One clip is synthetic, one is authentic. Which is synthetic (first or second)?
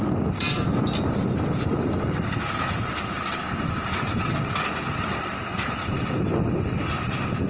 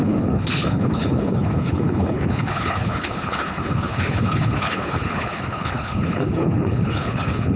second